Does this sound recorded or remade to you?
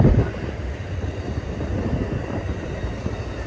recorded